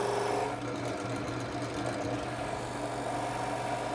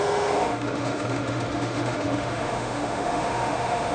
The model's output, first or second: second